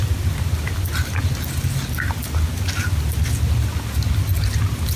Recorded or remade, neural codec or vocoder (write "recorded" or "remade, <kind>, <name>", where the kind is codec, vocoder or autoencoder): recorded